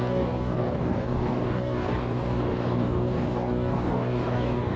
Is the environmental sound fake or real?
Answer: fake